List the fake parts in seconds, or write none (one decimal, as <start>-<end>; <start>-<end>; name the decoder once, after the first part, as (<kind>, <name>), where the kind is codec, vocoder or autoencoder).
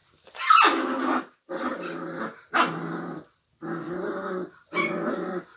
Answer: none